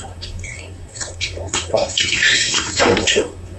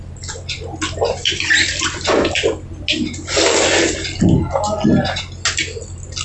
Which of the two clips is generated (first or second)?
first